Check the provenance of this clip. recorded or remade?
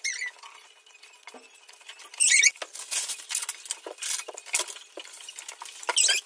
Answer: recorded